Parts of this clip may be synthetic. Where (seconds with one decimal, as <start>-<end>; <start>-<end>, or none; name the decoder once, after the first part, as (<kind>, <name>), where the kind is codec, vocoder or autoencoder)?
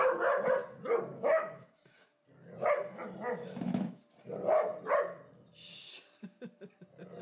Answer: 1.1-2.2 (autoencoder, DAC-VAE); 3.4-4.0